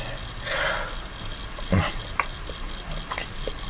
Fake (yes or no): no